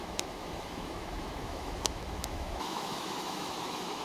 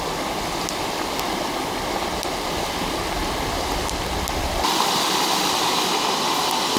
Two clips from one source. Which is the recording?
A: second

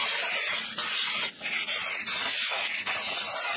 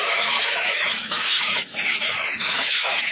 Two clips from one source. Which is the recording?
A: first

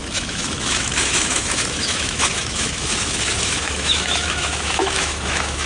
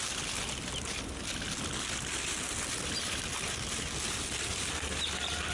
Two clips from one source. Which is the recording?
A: second